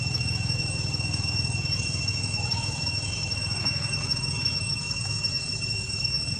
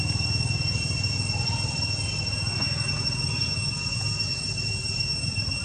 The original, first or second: second